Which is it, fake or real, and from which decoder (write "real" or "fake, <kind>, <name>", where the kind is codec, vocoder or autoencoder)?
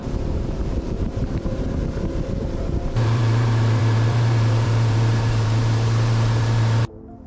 fake, vocoder, BigVGAN v2